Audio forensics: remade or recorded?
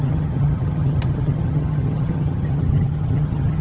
remade